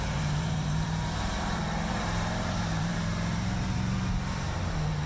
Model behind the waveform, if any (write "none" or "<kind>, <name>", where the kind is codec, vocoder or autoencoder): vocoder, BigVGAN v2